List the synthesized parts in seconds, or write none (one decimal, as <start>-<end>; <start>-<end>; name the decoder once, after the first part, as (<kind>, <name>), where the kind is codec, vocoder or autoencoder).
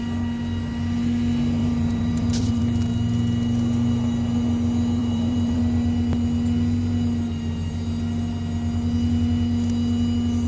1.6-2.6 (vocoder, BigVGAN v2); 5.0-5.6